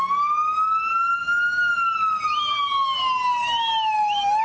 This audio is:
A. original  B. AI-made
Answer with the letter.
A